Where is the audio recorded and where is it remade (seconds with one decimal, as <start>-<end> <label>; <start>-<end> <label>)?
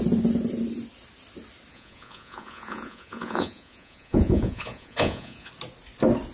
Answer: 0.0-1.7 recorded; 1.7-5.5 remade; 5.5-6.3 recorded